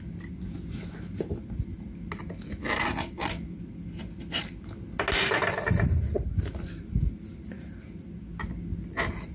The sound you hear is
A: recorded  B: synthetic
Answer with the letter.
A